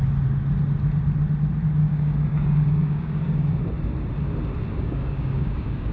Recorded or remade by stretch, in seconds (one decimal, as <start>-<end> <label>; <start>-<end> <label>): 0.0-1.8 recorded; 1.8-3.6 remade; 3.6-4.7 recorded; 4.7-5.9 remade

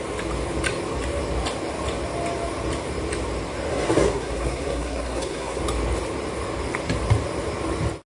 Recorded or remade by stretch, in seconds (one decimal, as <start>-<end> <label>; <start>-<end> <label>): 0.0-3.7 recorded; 3.7-5.6 remade; 5.6-8.1 recorded

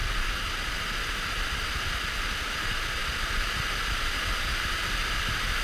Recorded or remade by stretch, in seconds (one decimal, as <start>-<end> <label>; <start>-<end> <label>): 0.0-5.6 recorded

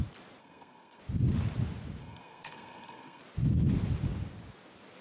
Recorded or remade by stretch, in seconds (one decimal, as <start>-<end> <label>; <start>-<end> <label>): 0.0-0.4 recorded; 0.4-1.0 remade; 1.0-2.0 recorded; 2.0-3.2 remade; 3.2-5.0 recorded

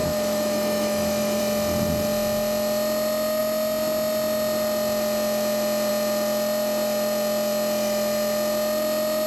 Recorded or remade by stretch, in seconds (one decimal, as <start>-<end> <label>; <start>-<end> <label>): 0.0-1.4 remade; 1.4-9.3 recorded

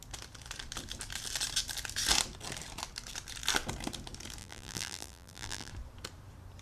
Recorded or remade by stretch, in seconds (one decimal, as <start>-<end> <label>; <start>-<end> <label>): 0.0-4.4 recorded; 4.4-5.7 remade; 5.7-6.6 recorded

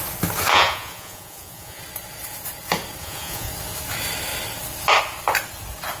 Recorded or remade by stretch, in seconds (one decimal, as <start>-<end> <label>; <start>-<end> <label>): 0.0-0.5 recorded; 0.5-1.8 remade; 1.8-3.0 recorded; 3.0-3.5 remade; 3.5-6.0 recorded

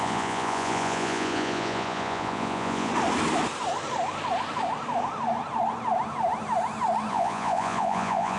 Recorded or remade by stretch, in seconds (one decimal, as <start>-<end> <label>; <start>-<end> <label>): 0.0-2.9 remade; 2.9-7.1 recorded; 7.1-8.4 remade